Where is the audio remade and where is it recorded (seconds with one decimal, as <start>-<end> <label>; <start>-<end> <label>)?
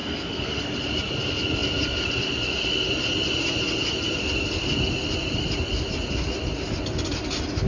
0.0-0.7 remade; 0.7-7.7 recorded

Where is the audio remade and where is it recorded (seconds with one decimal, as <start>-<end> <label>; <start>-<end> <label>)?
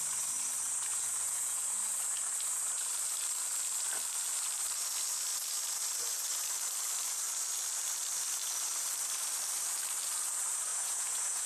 0.0-0.9 recorded; 0.9-1.7 remade; 1.7-10.7 recorded; 10.7-11.5 remade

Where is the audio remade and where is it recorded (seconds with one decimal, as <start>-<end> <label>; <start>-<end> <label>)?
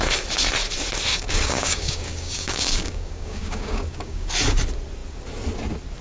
0.0-1.1 recorded; 1.1-4.3 remade; 4.3-6.0 recorded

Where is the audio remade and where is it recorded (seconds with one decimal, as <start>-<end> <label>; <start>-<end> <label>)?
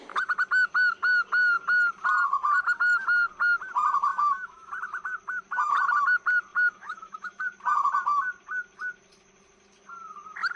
0.0-4.1 recorded; 4.1-4.7 remade; 4.7-6.5 recorded; 6.5-7.4 remade; 7.4-10.6 recorded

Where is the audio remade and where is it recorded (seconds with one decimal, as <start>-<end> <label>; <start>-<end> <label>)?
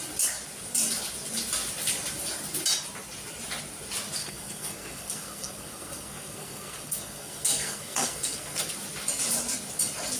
0.0-4.2 recorded; 4.2-8.7 remade; 8.7-10.2 recorded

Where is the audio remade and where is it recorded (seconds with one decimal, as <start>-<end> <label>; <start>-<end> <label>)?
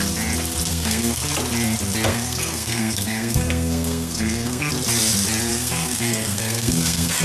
0.0-0.7 recorded; 0.7-1.2 remade; 1.2-2.1 recorded; 2.1-4.7 remade; 4.7-5.5 recorded; 5.5-7.2 remade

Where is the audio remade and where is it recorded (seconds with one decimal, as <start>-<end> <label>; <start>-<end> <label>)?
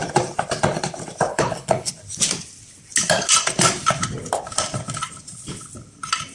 0.0-1.3 recorded; 1.3-1.9 remade; 1.9-6.3 recorded